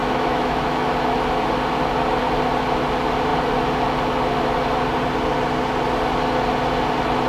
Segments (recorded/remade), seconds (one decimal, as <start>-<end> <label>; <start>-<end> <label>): 0.0-0.9 remade; 0.9-7.3 recorded